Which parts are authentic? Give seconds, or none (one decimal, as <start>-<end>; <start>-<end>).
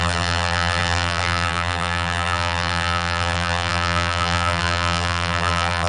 none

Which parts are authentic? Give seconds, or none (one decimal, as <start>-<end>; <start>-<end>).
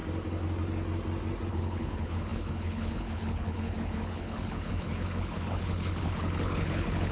0.0-1.5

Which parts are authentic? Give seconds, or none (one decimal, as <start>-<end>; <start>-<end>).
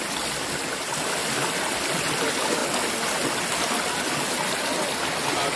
0.0-5.6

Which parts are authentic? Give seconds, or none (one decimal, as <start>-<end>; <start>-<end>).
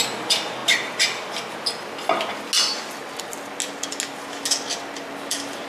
0.0-5.7